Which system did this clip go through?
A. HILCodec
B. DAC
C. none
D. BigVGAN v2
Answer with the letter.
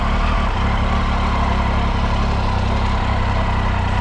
C